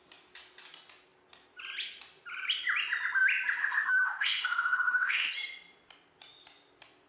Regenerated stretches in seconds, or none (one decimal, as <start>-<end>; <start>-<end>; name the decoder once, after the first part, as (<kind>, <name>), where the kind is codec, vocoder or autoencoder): 3.6-5.3 (autoencoder, DAC-VAE)